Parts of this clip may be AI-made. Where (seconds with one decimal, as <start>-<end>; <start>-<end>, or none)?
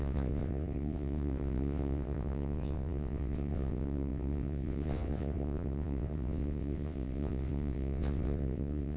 0.0-9.0